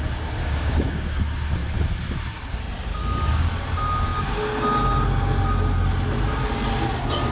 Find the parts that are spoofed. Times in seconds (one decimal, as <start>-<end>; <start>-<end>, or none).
0.4-1.2; 3.0-3.5